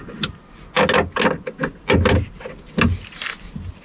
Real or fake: real